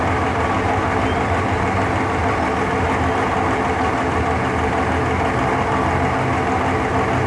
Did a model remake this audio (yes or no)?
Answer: no